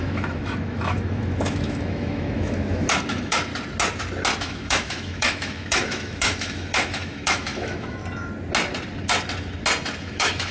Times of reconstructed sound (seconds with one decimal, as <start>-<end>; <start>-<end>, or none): 0.0-3.5; 4.4-8.0; 10.0-10.5